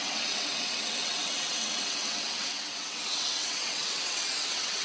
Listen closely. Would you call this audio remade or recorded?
remade